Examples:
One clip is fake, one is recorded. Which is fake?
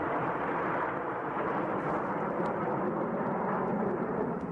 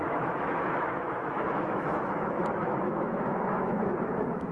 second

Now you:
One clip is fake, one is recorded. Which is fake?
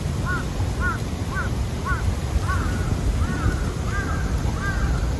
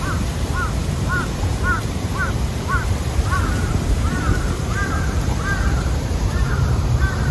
second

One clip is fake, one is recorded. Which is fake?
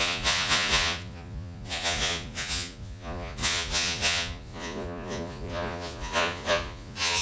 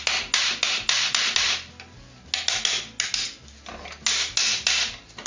first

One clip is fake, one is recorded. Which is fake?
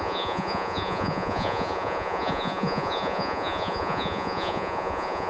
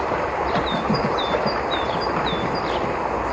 first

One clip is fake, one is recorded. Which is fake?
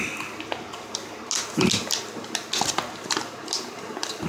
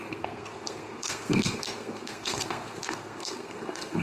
second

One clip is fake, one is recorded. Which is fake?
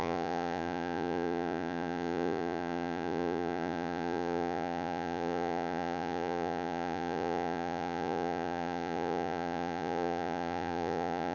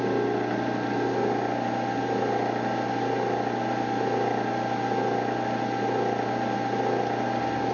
first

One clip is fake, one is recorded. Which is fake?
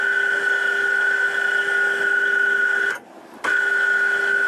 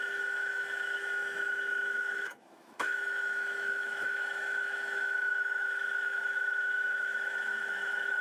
second